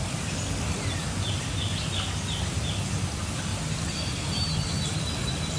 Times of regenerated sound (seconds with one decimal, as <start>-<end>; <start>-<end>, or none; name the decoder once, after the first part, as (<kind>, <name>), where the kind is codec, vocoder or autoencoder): none